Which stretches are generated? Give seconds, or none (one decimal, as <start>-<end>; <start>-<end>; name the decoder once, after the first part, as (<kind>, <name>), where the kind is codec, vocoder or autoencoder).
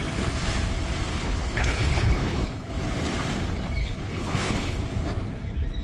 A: 1.1-2.7 (codec, HILCodec); 3.8-4.8